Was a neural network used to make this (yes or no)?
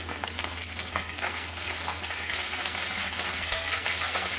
yes